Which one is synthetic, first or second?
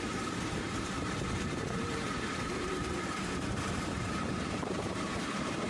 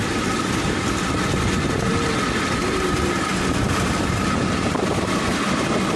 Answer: first